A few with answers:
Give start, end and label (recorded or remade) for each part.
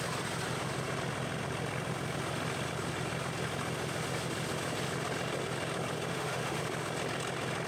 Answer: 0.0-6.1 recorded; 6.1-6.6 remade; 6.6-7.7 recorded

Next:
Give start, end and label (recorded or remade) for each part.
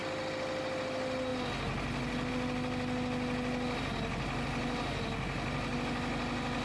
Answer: 0.0-6.6 recorded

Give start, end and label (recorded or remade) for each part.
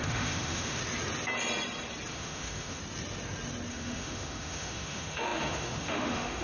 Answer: 0.0-0.8 remade; 0.8-2.1 recorded; 2.1-2.8 remade; 2.8-3.7 recorded; 3.7-6.4 remade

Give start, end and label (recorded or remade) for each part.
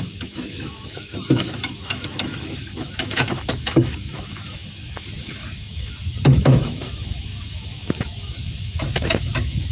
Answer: 0.0-9.7 remade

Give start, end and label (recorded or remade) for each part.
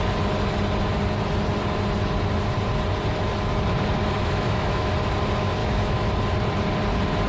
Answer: 0.0-4.2 recorded; 4.2-4.9 remade; 4.9-5.6 recorded; 5.6-6.1 remade; 6.1-7.3 recorded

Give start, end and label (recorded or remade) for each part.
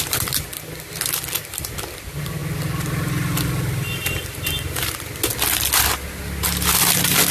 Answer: 0.0-7.3 recorded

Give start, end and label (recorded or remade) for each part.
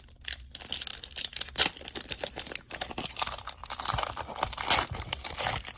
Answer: 0.0-5.8 recorded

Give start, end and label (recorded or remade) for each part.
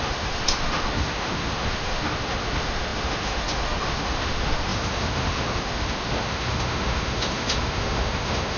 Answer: 0.0-8.6 remade